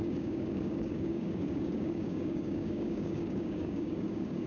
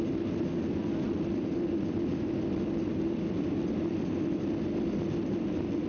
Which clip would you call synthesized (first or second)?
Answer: first